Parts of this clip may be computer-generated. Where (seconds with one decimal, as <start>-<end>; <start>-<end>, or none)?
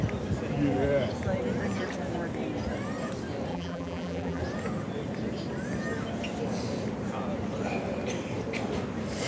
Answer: 3.5-4.4